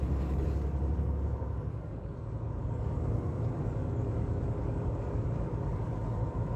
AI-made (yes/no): yes